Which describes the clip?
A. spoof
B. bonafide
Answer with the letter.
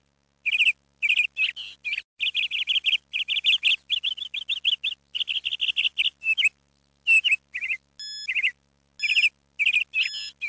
B